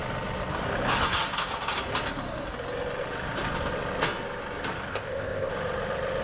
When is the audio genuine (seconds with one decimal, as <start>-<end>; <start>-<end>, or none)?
0.0-4.9; 5.5-6.2